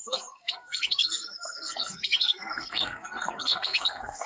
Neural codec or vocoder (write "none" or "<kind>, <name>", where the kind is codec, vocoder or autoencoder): codec, SNAC